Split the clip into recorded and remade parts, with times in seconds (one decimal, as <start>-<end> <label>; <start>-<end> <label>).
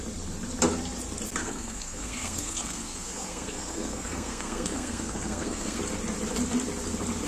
0.0-1.4 recorded; 1.4-5.8 remade; 5.8-7.3 recorded